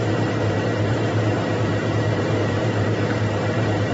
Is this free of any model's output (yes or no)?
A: no